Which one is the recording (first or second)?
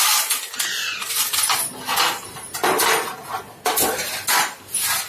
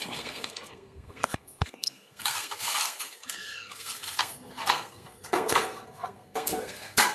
first